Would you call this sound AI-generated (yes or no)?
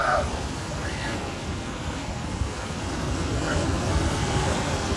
yes